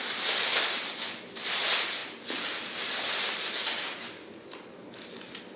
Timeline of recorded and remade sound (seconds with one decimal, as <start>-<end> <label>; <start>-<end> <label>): 0.0-5.6 recorded